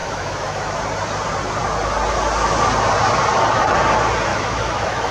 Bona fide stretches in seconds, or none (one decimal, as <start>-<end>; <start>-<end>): 0.8-4.3